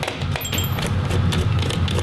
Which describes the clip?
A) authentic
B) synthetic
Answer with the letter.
A